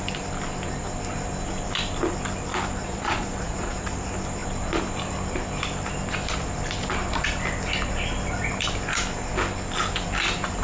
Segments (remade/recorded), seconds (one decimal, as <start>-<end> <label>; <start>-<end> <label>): 0.0-2.8 recorded; 2.8-3.8 remade; 3.8-10.6 recorded